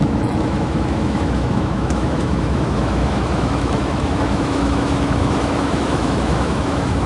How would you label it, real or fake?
fake